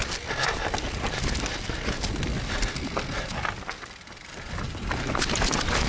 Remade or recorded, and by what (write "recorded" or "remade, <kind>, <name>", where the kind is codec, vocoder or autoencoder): recorded